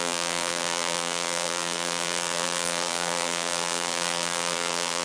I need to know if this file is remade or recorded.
remade